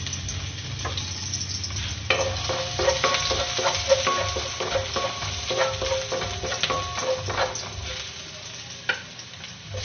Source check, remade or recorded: recorded